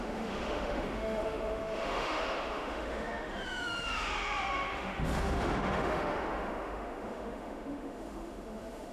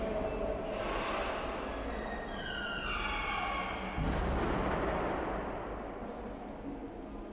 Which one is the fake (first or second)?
first